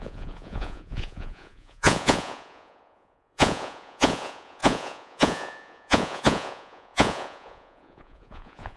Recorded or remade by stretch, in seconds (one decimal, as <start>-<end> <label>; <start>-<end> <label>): 0.0-8.8 remade